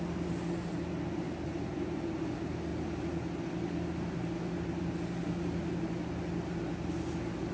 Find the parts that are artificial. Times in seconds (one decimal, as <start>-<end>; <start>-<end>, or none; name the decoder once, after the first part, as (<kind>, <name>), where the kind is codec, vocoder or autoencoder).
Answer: none